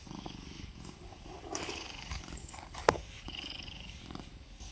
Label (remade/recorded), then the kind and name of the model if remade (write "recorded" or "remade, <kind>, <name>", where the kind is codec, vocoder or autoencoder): remade, codec, DAC